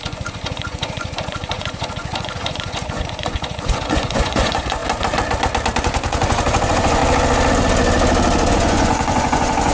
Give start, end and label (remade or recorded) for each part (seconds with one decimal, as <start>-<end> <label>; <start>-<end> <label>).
0.0-4.8 remade; 4.8-5.8 recorded; 5.8-7.0 remade; 7.0-8.5 recorded; 8.5-9.7 remade